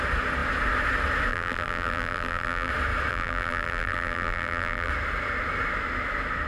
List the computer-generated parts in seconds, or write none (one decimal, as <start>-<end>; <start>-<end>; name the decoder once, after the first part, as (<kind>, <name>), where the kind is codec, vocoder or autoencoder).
1.3-2.7 (vocoder, BigVGAN v2); 3.1-4.9